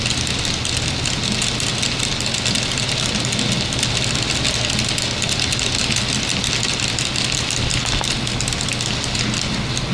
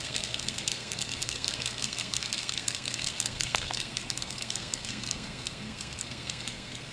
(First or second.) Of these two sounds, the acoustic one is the first